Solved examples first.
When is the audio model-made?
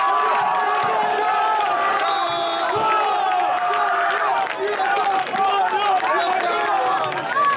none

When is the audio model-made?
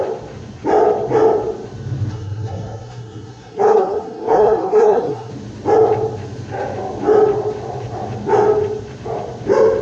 2.1-5.3 (codec, SNAC)